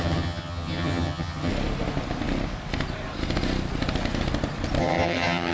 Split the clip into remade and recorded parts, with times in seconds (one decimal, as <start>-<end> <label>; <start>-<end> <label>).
0.0-1.5 remade; 1.5-4.8 recorded; 4.8-5.5 remade